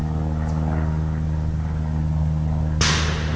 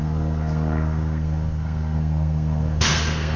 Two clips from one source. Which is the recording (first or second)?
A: first